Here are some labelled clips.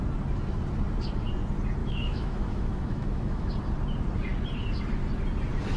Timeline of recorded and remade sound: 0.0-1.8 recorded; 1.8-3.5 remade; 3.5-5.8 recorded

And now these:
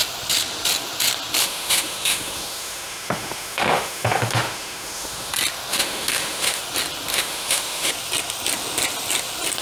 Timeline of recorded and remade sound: 0.0-1.4 recorded; 1.4-5.3 remade; 5.3-5.7 recorded; 5.7-6.6 remade; 6.6-7.1 recorded; 7.1-7.9 remade; 7.9-9.6 recorded

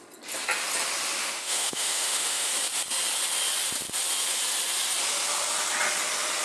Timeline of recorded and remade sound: 0.0-1.2 recorded; 1.2-2.5 remade; 2.5-6.4 recorded

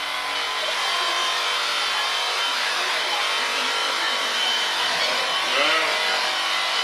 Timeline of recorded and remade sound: 0.0-2.5 recorded; 2.5-3.2 remade; 3.2-3.8 recorded; 3.8-5.0 remade; 5.0-6.8 recorded

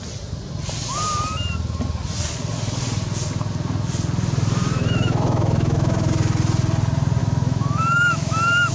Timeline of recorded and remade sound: 0.0-4.8 recorded; 4.8-6.1 remade; 6.1-7.2 recorded; 7.2-8.7 remade

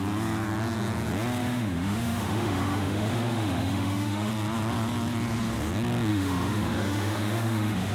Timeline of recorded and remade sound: 0.0-1.4 recorded; 1.4-4.3 remade; 4.3-6.1 recorded; 6.1-7.9 remade